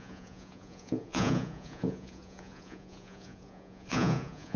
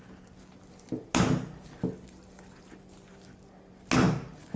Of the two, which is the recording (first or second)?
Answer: second